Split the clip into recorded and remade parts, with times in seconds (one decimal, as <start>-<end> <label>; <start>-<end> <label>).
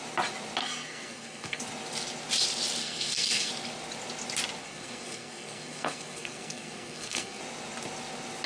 0.0-0.6 recorded; 0.6-1.6 remade; 1.6-2.8 recorded; 2.8-3.5 remade; 3.5-4.6 recorded; 4.6-7.4 remade; 7.4-8.5 recorded